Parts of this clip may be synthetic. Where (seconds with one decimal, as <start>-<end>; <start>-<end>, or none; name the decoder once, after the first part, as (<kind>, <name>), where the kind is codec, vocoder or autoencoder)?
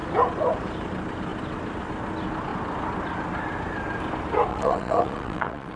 4.5-5.8 (vocoder, WaveNeXt)